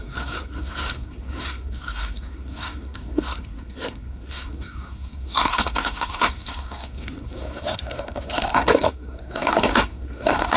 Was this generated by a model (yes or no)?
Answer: yes